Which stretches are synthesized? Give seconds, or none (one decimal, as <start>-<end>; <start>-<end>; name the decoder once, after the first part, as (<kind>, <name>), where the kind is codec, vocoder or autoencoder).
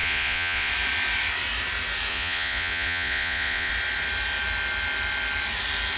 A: 0.0-0.7 (vocoder, Vocos); 2.1-3.7